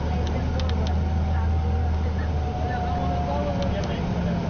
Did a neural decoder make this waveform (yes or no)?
no